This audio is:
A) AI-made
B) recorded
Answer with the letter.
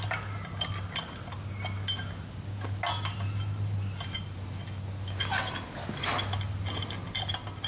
B